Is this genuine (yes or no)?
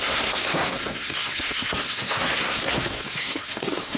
no